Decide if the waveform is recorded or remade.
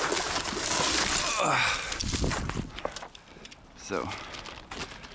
recorded